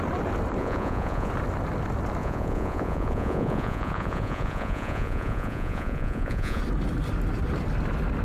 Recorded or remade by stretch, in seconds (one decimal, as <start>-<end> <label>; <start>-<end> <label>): 0.0-0.6 recorded; 0.6-1.3 remade; 1.3-2.2 recorded; 2.2-6.6 remade; 6.6-8.2 recorded